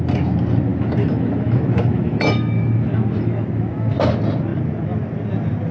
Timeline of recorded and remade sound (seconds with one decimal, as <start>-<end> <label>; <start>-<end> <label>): 0.0-0.7 recorded; 0.7-4.1 remade; 4.1-5.7 recorded